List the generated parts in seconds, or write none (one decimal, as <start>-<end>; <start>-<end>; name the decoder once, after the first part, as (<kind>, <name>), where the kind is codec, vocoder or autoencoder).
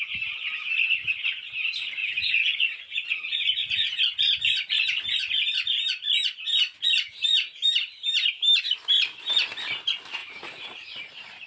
2.0-4.0 (vocoder, Vocos); 10.2-11.1